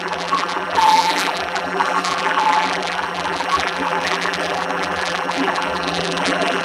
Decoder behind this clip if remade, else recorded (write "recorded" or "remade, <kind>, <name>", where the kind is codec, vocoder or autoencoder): remade, vocoder, BigVGAN v2